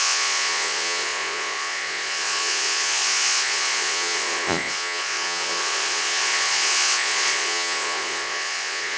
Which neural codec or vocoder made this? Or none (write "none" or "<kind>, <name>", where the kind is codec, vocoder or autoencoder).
vocoder, Vocos